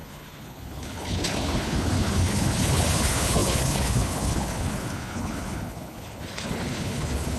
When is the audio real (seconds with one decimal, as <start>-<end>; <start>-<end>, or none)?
none